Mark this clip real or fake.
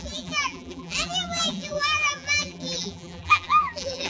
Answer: fake